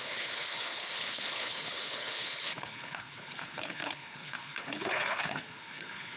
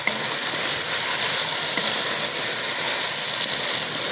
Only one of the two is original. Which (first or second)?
second